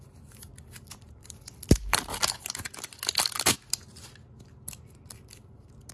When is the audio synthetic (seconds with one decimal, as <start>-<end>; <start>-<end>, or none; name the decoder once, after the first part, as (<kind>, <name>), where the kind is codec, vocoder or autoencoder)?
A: 0.0-2.1 (vocoder, BigVGAN v2)